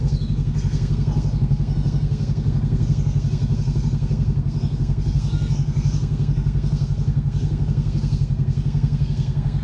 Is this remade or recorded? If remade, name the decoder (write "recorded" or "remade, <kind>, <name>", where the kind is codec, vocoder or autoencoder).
remade, codec, SNAC